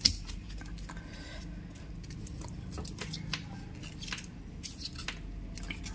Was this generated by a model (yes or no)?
no